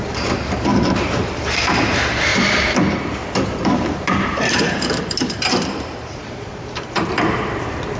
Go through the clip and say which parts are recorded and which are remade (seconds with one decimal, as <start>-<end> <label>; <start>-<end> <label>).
0.0-2.3 remade; 2.3-3.0 recorded; 3.0-8.0 remade